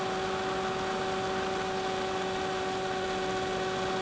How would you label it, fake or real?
real